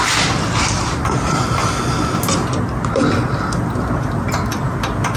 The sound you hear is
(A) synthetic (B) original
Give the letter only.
B